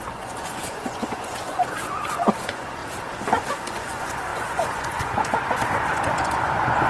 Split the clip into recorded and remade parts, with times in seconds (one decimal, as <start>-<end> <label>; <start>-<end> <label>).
0.0-2.8 remade; 2.8-3.5 recorded; 3.5-6.9 remade